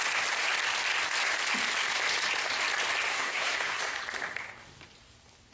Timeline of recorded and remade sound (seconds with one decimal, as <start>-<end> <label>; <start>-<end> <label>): 0.0-3.1 recorded; 3.1-3.8 remade; 3.8-5.5 recorded